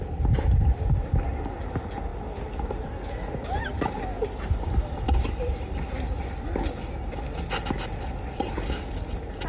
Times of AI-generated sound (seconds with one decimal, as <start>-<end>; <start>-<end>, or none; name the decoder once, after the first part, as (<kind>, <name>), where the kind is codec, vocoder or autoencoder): none